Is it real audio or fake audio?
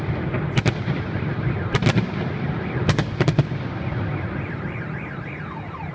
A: real